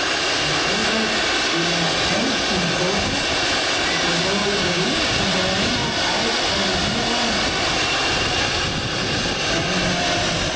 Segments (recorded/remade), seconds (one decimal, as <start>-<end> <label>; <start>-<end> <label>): 0.0-4.4 recorded; 4.4-5.2 remade; 5.2-10.6 recorded